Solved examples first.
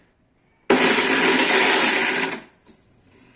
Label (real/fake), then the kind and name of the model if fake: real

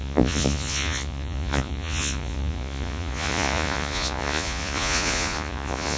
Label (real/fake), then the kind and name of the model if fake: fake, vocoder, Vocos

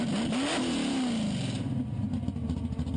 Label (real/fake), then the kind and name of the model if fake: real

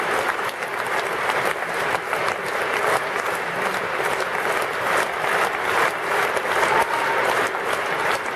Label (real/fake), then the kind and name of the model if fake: real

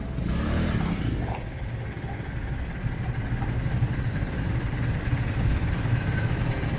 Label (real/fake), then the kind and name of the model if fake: real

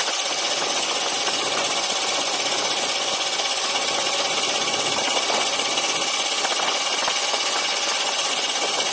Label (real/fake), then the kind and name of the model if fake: fake, vocoder, Vocos